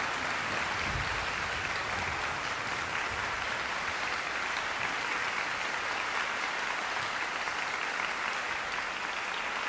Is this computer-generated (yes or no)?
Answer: no